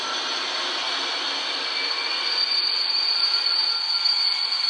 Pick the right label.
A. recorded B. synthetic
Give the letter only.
A